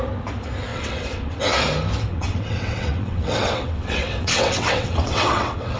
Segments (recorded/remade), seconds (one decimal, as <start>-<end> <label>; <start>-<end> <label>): 0.0-0.7 recorded; 0.7-1.4 remade; 1.4-2.1 recorded; 2.1-5.8 remade